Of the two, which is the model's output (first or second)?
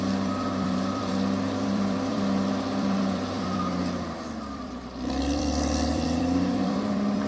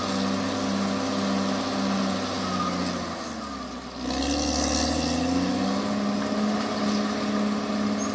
first